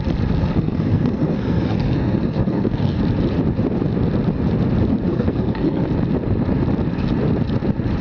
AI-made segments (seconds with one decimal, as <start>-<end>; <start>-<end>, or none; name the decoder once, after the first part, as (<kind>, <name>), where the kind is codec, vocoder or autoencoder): 0.4-3.0 (codec, SNAC); 5.1-5.8

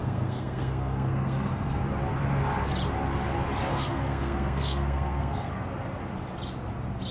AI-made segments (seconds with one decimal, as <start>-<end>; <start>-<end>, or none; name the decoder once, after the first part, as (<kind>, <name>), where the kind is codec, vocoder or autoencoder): 0.0-1.8 (codec, SNAC); 3.7-5.5

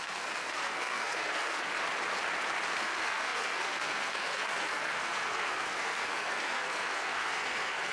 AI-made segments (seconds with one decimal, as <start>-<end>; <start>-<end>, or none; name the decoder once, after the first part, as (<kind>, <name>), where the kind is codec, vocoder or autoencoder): 0.0-1.7 (codec, SNAC); 2.8-7.9

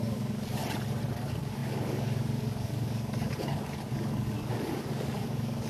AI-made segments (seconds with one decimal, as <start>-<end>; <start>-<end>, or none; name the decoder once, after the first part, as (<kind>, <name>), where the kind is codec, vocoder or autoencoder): 0.0-0.6 (codec, DAC); 1.1-5.7

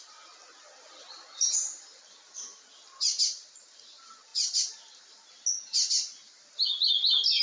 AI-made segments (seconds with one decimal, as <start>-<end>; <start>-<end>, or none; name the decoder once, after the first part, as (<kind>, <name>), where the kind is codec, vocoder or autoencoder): none